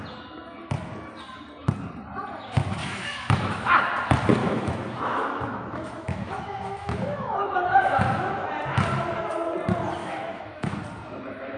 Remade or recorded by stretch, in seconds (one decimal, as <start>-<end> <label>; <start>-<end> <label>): 0.0-2.8 recorded; 2.8-3.7 remade; 3.7-4.4 recorded; 4.4-8.0 remade; 8.0-10.0 recorded; 10.0-10.8 remade; 10.8-11.6 recorded